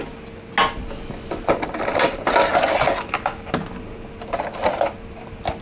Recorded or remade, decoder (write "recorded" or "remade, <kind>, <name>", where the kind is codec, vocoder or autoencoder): recorded